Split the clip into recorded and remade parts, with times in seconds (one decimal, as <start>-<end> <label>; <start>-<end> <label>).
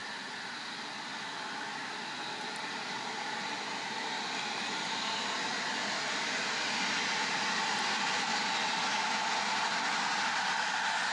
0.0-11.1 recorded